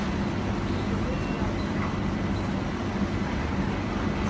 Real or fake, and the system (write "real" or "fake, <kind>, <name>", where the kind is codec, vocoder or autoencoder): real